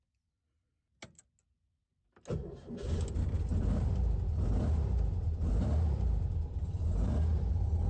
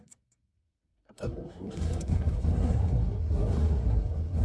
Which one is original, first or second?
first